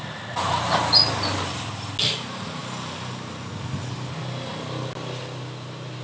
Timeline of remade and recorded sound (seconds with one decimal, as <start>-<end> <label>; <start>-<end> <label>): 0.0-6.0 recorded